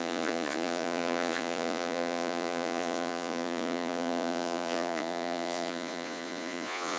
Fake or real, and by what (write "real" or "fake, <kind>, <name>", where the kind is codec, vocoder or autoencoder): fake, vocoder, Vocos